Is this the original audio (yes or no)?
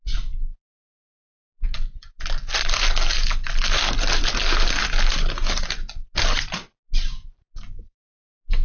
yes